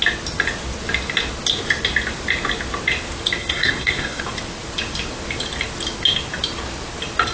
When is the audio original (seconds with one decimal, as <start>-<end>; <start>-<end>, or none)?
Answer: 0.0-3.4; 4.2-7.3